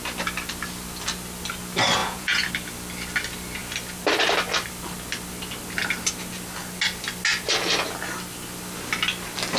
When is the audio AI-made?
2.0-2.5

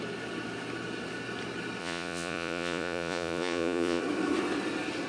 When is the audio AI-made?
1.8-4.0

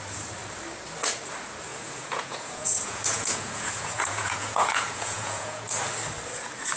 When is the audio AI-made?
1.7-5.8